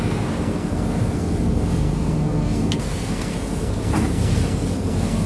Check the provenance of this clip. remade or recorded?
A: remade